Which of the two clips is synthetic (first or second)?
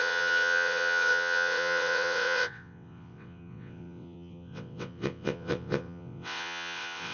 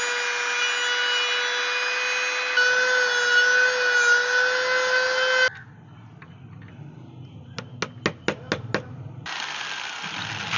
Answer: first